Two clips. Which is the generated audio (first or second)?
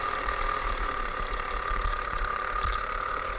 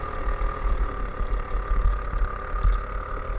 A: first